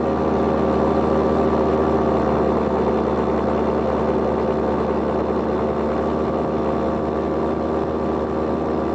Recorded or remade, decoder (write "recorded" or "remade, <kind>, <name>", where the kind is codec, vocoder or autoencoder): recorded